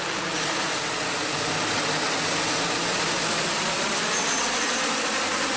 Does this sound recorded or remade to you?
recorded